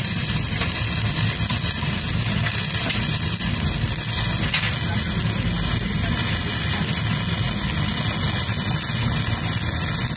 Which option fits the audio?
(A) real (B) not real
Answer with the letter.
A